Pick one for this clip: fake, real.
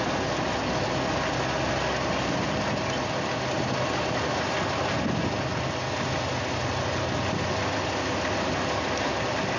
real